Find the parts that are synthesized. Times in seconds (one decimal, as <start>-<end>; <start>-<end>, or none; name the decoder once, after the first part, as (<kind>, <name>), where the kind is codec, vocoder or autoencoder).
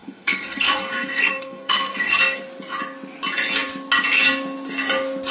0.0-2.4 (codec, SNAC)